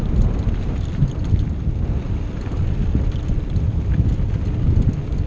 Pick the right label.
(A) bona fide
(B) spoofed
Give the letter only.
A